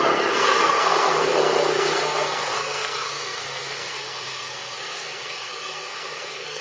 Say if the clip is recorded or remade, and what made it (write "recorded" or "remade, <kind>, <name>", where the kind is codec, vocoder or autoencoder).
remade, codec, SNAC